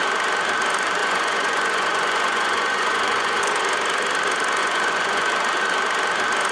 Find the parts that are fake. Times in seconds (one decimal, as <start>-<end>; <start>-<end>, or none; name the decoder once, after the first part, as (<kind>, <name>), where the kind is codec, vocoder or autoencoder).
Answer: 1.0-3.6 (vocoder, Vocos); 4.6-5.3

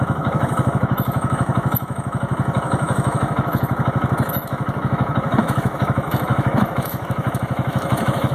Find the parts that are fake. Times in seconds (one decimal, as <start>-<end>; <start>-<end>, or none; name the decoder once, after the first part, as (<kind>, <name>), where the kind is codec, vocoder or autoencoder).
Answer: 0.0-8.3 (autoencoder, DAC-VAE)

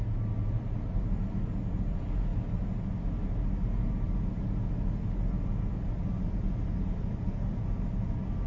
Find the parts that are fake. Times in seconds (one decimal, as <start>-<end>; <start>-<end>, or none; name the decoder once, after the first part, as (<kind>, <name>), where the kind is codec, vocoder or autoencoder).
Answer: none

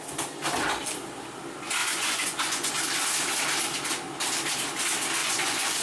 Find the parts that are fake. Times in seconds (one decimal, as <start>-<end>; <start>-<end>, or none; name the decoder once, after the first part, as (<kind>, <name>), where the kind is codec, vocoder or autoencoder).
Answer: 1.8-2.7 (vocoder, Vocos); 5.2-5.8